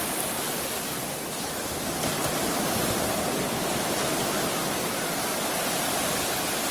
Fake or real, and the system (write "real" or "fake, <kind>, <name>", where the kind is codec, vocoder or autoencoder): real